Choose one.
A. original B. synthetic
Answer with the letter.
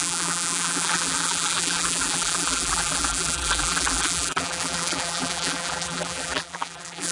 B